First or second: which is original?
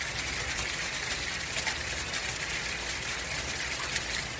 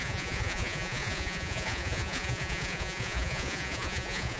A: first